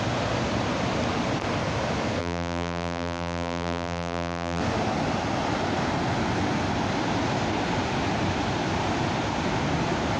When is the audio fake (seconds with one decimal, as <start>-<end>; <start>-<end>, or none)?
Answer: 2.2-4.6